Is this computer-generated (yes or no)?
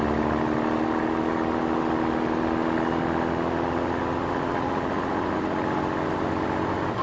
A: no